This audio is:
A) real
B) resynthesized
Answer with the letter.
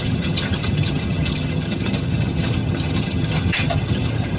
B